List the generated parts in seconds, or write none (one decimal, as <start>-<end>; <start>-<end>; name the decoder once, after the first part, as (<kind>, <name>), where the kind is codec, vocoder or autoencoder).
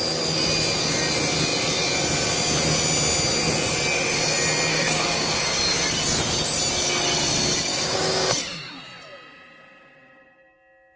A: 4.7-5.4 (codec, DAC); 7.7-8.7